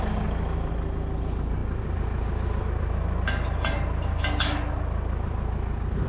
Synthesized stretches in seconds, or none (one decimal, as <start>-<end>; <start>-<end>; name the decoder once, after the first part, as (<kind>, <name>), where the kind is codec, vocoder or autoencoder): none